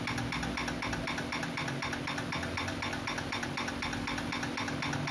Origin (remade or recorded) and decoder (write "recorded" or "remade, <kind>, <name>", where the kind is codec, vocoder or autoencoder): recorded